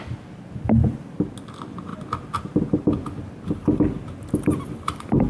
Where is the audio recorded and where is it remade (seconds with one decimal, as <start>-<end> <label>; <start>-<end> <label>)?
0.0-5.3 recorded